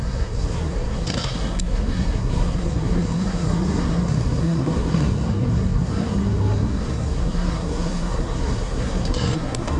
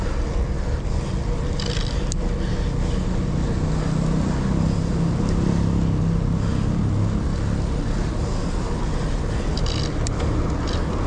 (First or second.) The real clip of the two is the second